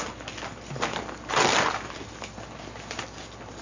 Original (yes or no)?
yes